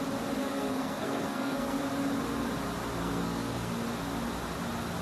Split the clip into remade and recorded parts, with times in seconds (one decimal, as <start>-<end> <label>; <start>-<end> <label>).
0.0-0.4 recorded; 0.4-1.8 remade; 1.8-3.0 recorded; 3.0-3.7 remade; 3.7-5.0 recorded